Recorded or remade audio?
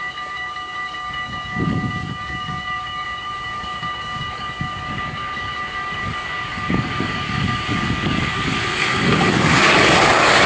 remade